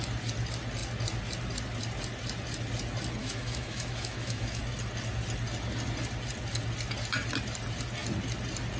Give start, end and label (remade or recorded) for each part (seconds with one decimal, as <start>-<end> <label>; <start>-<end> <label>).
0.0-3.2 recorded; 3.2-4.6 remade; 4.6-8.8 recorded